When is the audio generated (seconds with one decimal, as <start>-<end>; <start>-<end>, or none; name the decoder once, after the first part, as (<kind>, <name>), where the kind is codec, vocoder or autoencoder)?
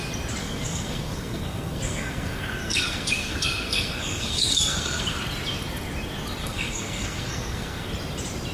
0.4-5.2 (codec, SNAC); 6.4-7.9